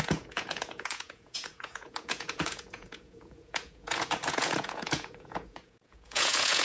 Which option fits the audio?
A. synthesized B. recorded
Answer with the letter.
A